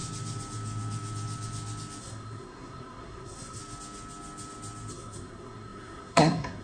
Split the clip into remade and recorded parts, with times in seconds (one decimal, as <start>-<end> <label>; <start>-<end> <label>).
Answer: 0.0-2.0 recorded; 2.0-3.6 remade; 3.6-4.9 recorded; 4.9-6.6 remade